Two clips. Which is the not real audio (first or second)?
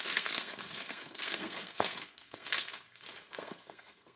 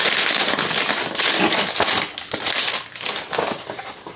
first